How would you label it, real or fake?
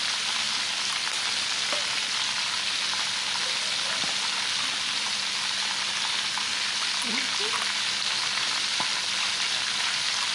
real